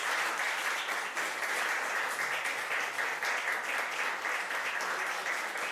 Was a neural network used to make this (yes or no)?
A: yes